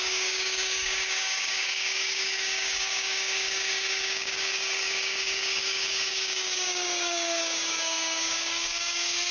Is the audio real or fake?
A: fake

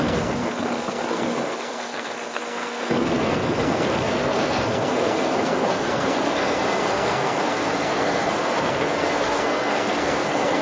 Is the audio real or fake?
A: fake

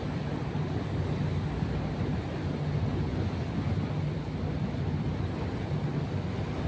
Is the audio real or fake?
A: real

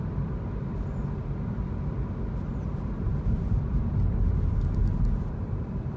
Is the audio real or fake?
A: real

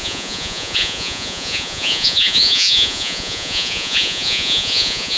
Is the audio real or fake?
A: fake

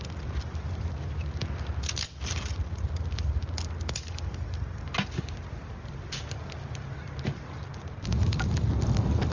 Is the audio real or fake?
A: real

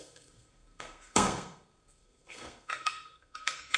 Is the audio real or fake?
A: fake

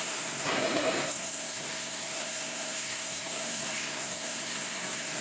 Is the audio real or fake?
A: fake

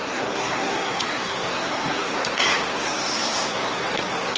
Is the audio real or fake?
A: fake